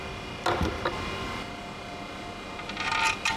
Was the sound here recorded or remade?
recorded